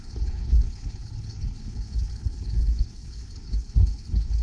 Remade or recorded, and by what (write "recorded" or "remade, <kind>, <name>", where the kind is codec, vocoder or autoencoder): remade, codec, HILCodec